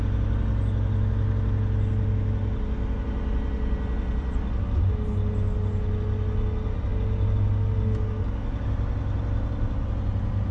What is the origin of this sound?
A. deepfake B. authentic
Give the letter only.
B